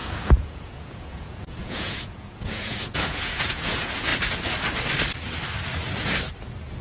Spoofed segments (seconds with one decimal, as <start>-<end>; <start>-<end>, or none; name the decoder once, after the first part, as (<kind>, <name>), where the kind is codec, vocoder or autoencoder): 0.0-4.1 (vocoder, Vocos)